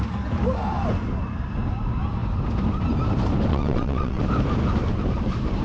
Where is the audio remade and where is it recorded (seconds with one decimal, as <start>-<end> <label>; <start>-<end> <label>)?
0.0-3.5 recorded; 3.5-4.2 remade; 4.2-5.6 recorded